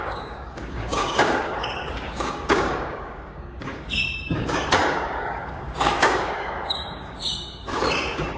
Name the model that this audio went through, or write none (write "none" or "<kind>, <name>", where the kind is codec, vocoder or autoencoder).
codec, DAC